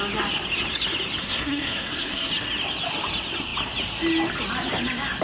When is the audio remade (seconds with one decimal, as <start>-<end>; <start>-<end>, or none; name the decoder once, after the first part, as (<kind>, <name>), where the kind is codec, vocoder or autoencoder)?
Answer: 1.2-2.3 (codec, SNAC)